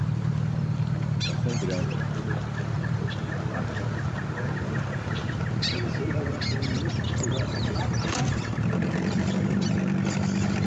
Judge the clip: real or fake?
real